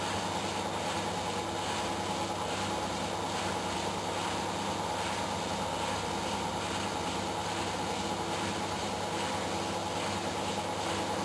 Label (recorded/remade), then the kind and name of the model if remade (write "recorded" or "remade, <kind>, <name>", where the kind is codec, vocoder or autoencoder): recorded